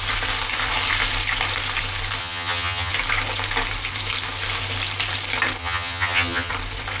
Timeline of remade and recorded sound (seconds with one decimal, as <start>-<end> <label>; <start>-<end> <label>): 0.0-2.2 recorded; 2.2-2.9 remade; 2.9-5.6 recorded; 5.6-6.5 remade; 6.5-7.0 recorded